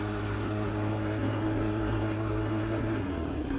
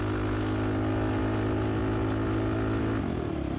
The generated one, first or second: first